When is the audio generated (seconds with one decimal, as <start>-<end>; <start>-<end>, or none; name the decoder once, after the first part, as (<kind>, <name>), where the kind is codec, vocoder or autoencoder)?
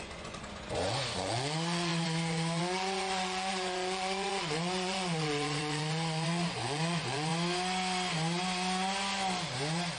0.0-7.3 (vocoder, Vocos)